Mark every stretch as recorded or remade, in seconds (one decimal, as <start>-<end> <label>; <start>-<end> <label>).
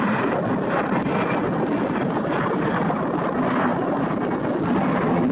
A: 0.0-5.3 recorded